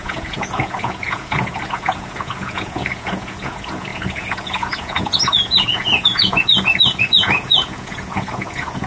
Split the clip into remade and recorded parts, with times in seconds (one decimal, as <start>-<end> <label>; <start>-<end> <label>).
0.0-8.9 remade